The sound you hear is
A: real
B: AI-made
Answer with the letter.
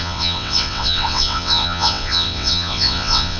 B